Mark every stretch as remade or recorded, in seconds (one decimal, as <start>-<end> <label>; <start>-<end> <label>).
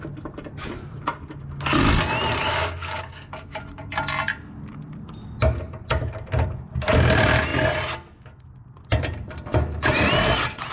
0.0-2.4 recorded; 2.4-3.6 remade; 3.6-10.7 recorded